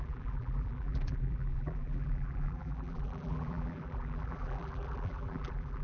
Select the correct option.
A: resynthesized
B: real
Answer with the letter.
A